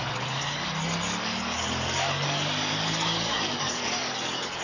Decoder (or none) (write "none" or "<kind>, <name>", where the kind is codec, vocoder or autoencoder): codec, DAC